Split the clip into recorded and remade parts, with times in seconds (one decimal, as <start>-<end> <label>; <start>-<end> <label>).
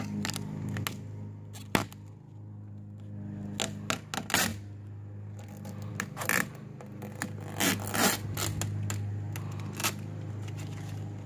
0.0-4.5 recorded; 4.5-5.9 remade; 5.9-9.8 recorded; 9.8-10.3 remade; 10.3-11.3 recorded